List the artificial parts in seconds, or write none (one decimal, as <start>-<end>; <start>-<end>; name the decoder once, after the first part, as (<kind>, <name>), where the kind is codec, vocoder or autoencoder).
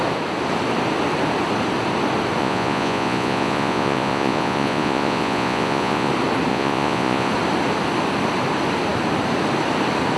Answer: 2.4-6.1 (vocoder, Vocos); 6.5-7.3